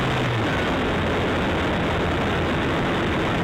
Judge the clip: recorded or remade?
recorded